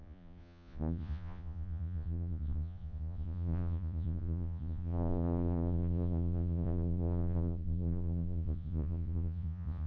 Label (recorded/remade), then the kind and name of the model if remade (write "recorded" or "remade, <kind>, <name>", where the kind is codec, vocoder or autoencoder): remade, vocoder, Vocos